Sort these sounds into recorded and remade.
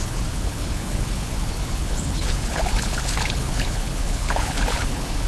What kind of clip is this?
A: remade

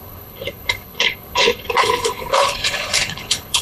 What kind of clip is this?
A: remade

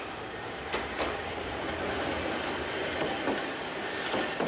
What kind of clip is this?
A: recorded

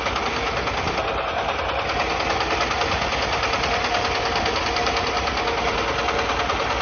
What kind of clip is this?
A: recorded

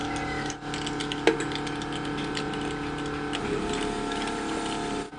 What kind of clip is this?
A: recorded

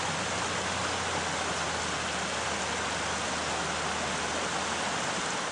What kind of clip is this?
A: recorded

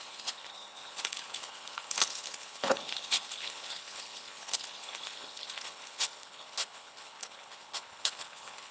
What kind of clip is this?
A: remade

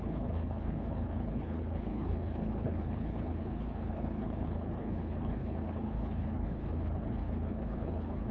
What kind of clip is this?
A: remade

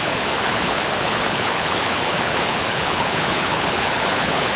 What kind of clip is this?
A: remade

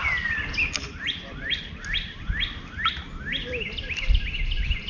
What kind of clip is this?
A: recorded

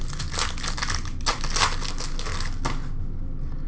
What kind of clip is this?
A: recorded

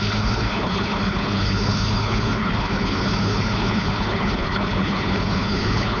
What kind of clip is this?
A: remade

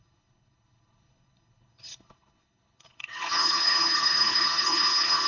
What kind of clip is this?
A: remade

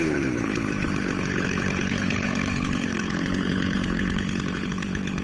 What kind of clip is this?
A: remade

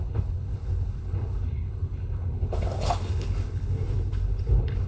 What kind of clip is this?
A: remade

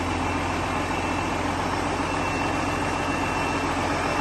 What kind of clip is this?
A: recorded